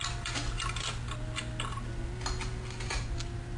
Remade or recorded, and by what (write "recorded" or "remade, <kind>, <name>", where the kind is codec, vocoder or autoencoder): recorded